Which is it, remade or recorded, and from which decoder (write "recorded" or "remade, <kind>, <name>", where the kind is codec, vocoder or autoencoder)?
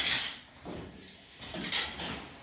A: recorded